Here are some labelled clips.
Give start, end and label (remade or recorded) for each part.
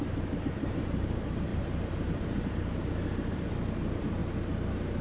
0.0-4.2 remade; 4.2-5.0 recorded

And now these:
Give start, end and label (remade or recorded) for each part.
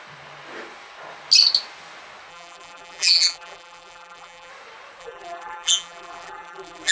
0.0-2.3 recorded; 2.3-4.5 remade; 4.5-5.0 recorded; 5.0-6.9 remade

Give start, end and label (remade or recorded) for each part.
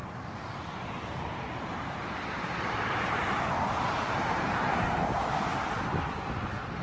0.0-4.1 remade; 4.1-6.8 recorded